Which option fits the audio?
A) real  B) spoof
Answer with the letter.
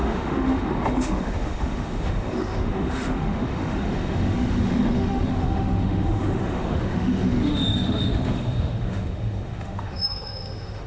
B